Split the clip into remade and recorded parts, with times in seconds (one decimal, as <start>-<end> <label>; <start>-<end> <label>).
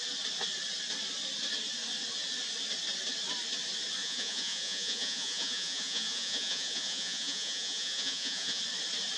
0.0-4.0 recorded; 4.0-8.6 remade; 8.6-9.2 recorded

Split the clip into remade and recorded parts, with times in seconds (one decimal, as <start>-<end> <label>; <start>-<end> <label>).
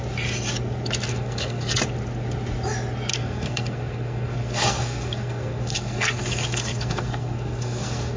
0.0-1.1 recorded; 1.1-1.7 remade; 1.7-3.1 recorded; 3.1-8.2 remade